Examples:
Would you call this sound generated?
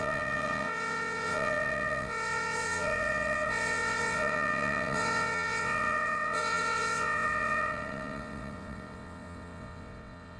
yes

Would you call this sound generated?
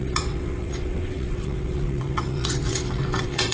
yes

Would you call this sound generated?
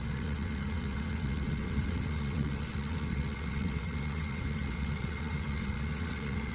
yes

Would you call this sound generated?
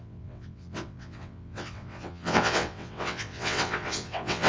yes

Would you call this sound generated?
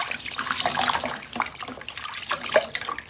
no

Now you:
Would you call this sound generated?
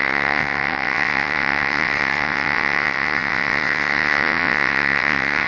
yes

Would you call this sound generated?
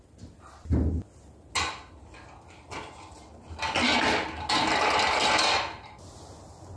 no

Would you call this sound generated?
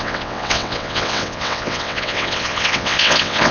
yes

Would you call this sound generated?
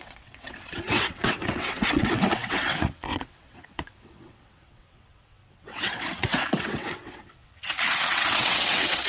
yes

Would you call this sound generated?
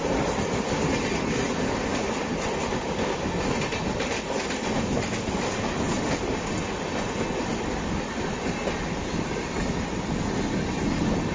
no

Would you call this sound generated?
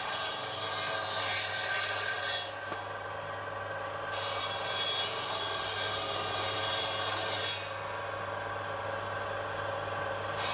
no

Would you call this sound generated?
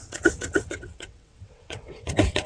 yes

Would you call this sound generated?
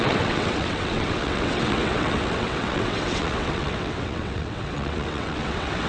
yes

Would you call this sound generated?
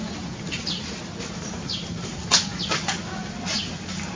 no